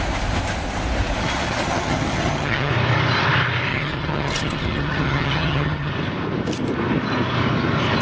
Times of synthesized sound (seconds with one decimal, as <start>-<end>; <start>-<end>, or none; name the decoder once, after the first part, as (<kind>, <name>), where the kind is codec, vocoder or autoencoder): 1.2-2.7 (vocoder, HiFi-GAN); 3.7-5.9